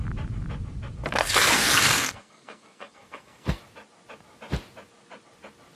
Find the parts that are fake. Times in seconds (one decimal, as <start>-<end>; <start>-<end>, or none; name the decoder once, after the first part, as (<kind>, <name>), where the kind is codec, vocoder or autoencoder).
1.2-3.6 (codec, SNAC)